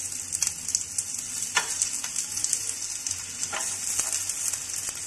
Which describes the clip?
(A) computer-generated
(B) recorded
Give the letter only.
B